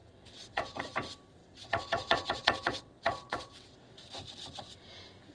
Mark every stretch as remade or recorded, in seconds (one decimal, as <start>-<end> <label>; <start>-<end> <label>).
0.0-0.8 remade; 0.8-1.4 recorded; 1.4-3.9 remade; 3.9-5.3 recorded